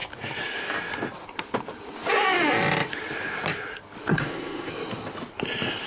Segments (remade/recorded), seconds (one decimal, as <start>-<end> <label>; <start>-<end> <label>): 0.0-4.1 recorded; 4.1-4.7 remade; 4.7-5.9 recorded